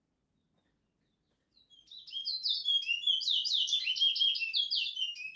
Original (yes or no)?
yes